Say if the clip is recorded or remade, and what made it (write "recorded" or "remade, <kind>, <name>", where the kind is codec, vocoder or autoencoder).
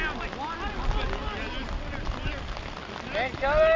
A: recorded